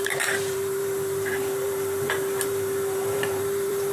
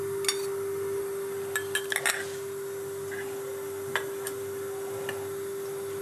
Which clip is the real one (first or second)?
second